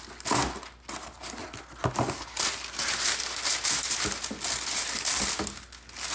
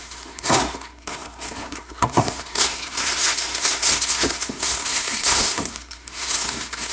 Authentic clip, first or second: first